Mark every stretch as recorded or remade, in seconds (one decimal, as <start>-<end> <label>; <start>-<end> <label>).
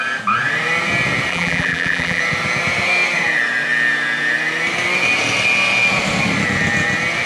0.0-1.3 recorded; 1.3-2.2 remade; 2.2-7.3 recorded